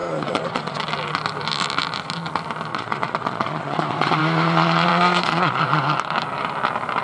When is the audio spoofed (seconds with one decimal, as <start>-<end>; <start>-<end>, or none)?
0.0-0.8; 2.7-4.2; 4.9-5.6